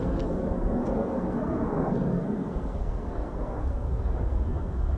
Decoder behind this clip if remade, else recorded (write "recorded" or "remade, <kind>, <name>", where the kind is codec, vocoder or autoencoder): remade, codec, SNAC